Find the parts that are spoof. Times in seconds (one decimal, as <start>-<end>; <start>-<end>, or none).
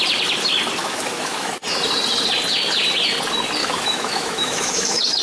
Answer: 0.8-1.5; 3.6-5.2